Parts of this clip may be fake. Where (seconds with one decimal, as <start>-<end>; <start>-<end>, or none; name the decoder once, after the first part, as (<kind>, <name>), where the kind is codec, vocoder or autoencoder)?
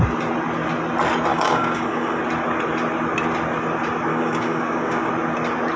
1.3-2.2 (codec, DAC); 4.1-5.1